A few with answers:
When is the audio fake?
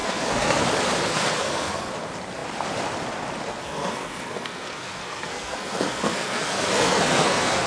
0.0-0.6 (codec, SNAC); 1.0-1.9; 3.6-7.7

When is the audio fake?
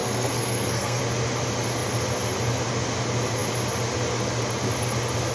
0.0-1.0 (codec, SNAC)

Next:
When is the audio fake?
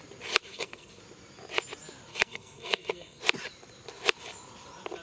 0.4-1.0 (codec, SNAC); 2.1-3.2